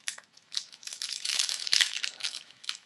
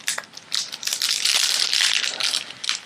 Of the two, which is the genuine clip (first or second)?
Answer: second